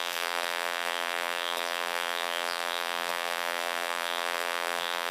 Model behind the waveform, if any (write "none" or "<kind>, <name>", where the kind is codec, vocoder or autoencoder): vocoder, BigVGAN v2